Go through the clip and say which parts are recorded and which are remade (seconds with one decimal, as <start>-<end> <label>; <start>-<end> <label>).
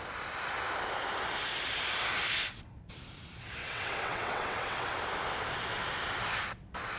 0.0-3.6 recorded; 3.6-5.0 remade; 5.0-7.0 recorded